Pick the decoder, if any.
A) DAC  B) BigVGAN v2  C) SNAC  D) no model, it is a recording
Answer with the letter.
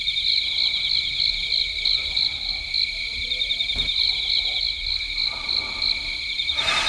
D